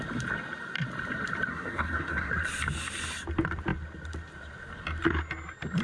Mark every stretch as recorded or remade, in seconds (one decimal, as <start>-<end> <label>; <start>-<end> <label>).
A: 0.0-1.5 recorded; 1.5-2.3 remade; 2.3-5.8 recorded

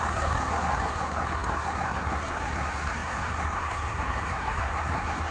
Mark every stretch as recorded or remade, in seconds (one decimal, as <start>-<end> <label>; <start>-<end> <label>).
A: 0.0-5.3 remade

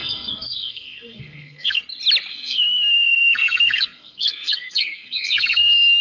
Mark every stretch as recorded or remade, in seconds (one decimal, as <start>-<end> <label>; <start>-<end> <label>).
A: 0.0-1.8 remade; 1.8-2.3 recorded; 2.3-6.0 remade

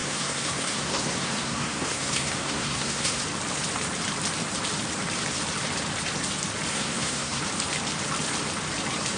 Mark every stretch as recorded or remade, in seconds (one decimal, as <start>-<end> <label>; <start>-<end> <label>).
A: 0.0-3.2 remade; 3.2-6.7 recorded; 6.7-7.4 remade; 7.4-9.2 recorded